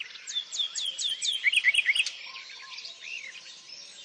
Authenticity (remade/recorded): recorded